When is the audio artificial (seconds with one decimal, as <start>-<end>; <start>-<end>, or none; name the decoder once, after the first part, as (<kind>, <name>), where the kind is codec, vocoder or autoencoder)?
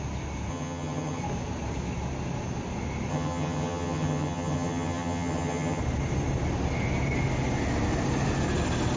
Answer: 0.5-1.2 (vocoder, HiFi-GAN); 3.1-5.8